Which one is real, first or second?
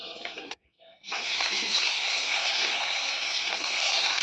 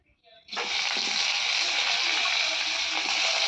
second